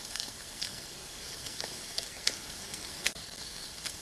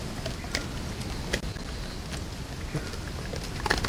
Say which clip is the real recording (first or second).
second